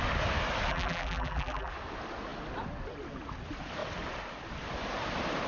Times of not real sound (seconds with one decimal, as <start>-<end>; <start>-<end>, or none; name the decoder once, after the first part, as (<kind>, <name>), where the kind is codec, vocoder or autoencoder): 0.7-1.7 (vocoder, BigVGAN v2)